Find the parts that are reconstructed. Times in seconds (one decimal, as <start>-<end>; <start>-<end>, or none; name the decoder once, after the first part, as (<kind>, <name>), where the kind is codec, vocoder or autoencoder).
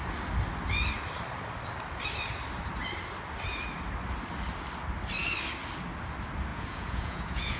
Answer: 6.5-7.6 (vocoder, Vocos)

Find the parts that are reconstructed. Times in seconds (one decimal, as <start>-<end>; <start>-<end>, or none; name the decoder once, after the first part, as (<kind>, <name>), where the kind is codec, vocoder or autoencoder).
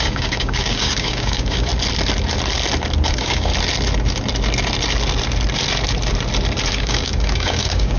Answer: 0.0-1.7 (codec, DAC); 3.1-3.5; 6.7-8.0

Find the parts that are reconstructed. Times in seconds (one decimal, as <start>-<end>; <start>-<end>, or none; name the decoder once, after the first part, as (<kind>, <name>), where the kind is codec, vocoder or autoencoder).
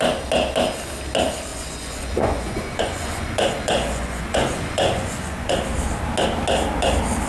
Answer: 1.5-5.5 (vocoder, Vocos)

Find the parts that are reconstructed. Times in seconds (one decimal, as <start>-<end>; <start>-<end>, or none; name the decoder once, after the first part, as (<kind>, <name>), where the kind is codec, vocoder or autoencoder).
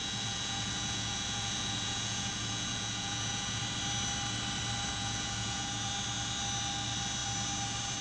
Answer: 0.0-3.6 (vocoder, Vocos); 4.9-5.9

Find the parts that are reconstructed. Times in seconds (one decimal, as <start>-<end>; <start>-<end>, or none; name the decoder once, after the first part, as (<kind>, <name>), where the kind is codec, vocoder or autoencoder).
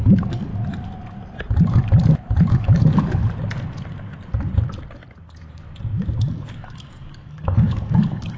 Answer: 0.0-0.5 (codec, DAC); 2.5-3.2; 6.3-8.4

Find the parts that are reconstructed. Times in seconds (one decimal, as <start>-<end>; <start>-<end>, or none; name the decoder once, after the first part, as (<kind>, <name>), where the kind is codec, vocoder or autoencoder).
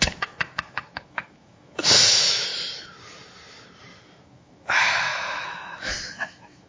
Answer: 0.0-2.5 (autoencoder, DAC-VAE); 4.0-6.7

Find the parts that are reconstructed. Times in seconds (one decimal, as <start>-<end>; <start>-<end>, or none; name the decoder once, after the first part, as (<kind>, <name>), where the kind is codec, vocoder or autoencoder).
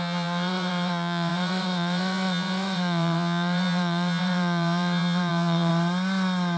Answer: 0.0-5.7 (vocoder, WaveNeXt)